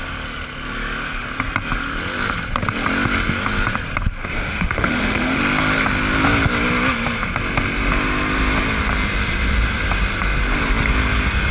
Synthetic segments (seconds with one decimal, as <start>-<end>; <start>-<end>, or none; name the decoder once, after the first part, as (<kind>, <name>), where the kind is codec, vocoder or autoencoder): 4.2-5.4 (autoencoder, DAC-VAE)